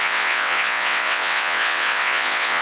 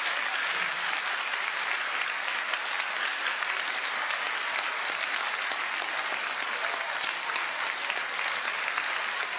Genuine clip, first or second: second